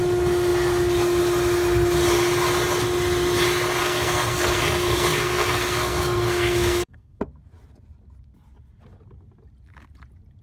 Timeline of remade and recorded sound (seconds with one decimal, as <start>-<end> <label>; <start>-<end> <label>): 0.0-3.8 recorded; 3.8-7.2 remade; 7.2-10.4 recorded